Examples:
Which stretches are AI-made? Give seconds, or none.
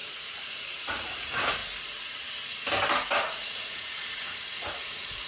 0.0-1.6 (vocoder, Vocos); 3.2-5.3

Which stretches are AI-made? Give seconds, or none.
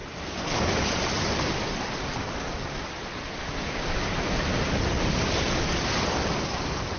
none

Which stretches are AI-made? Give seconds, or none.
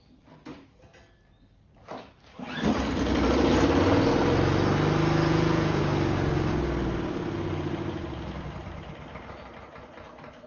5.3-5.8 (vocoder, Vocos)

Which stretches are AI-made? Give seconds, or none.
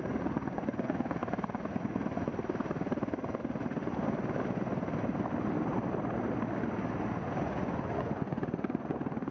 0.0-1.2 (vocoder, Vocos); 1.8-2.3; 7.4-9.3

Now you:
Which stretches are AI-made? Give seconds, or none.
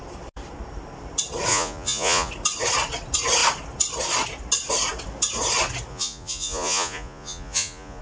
1.5-2.3 (vocoder, Vocos); 5.9-8.0